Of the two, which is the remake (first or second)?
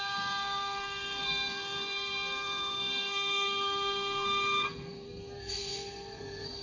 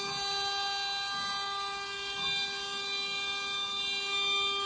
first